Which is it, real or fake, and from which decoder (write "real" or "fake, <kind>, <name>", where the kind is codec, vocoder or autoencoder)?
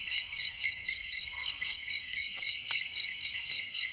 fake, codec, SNAC